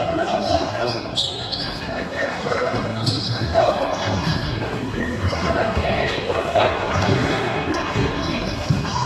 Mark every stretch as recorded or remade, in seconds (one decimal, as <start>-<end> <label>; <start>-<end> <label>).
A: 0.0-9.1 remade